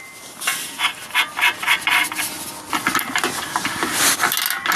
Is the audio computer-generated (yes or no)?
no